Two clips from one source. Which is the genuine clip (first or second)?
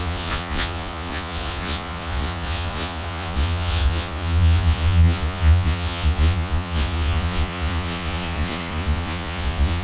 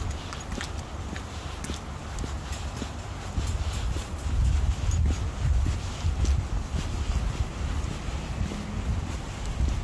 second